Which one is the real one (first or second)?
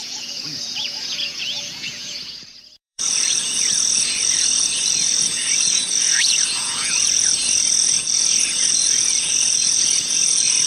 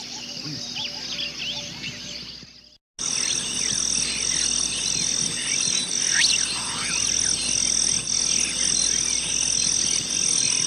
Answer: second